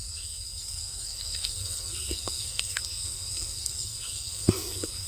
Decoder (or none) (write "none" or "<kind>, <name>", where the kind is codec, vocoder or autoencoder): codec, SNAC